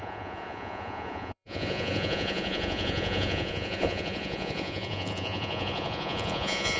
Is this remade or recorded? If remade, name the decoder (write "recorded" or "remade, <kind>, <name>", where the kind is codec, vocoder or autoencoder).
remade, vocoder, Vocos